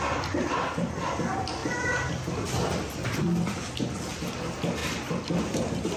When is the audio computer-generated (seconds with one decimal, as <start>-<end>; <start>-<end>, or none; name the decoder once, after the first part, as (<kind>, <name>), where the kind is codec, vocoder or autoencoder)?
none